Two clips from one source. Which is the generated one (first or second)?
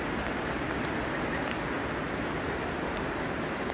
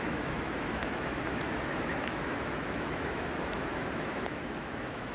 second